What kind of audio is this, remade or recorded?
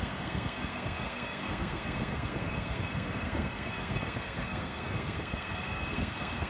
remade